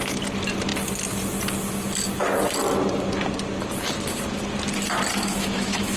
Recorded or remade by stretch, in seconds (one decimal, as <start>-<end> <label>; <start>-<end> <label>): 0.0-5.1 recorded; 5.1-6.0 remade